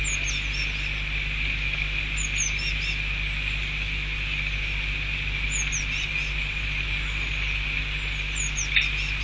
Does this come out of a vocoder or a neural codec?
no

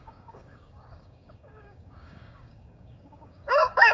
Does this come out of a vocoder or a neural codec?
yes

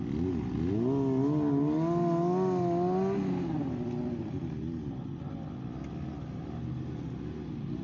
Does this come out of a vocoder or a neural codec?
no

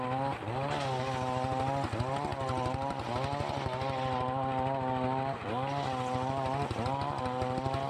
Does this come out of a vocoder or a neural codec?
no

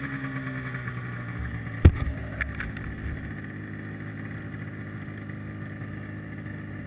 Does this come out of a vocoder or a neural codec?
no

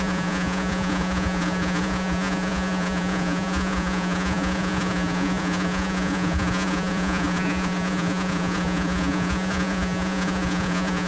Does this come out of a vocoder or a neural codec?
yes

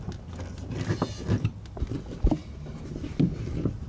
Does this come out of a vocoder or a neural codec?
no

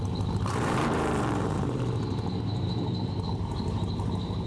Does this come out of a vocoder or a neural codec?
yes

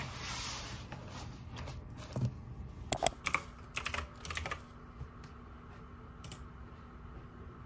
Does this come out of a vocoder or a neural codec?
no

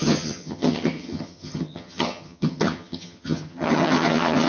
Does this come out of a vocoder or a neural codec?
yes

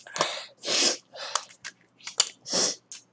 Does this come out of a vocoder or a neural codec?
no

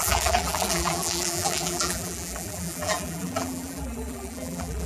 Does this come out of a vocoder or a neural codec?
yes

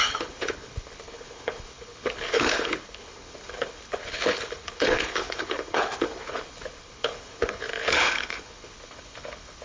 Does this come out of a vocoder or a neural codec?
yes